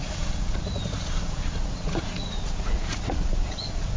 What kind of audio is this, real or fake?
fake